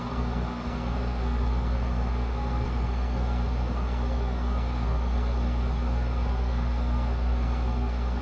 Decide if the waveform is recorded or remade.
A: remade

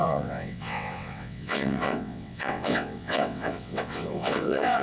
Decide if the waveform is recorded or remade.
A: remade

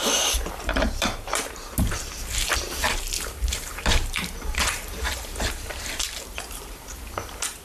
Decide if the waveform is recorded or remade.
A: remade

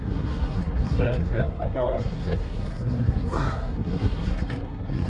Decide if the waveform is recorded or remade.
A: remade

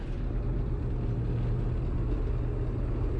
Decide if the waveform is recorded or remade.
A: recorded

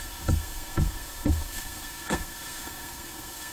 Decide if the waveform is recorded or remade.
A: remade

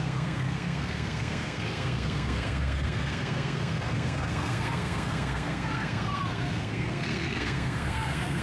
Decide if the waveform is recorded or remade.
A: remade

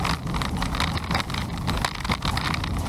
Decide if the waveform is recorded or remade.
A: recorded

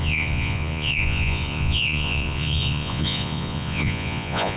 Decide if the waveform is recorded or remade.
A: remade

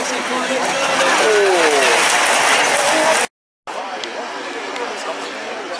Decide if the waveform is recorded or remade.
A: recorded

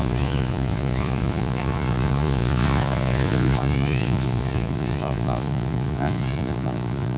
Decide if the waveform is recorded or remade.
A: remade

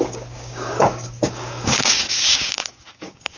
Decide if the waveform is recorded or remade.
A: remade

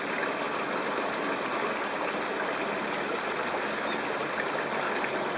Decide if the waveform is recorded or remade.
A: recorded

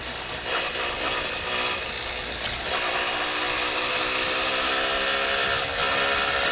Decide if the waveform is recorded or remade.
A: recorded